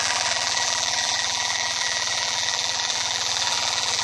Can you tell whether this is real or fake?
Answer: fake